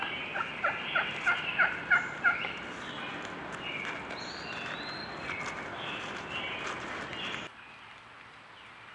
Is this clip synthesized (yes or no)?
no